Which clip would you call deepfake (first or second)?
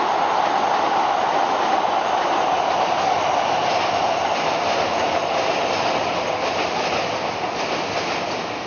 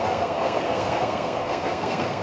second